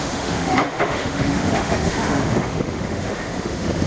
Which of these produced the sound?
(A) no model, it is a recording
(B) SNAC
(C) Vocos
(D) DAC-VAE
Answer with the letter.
D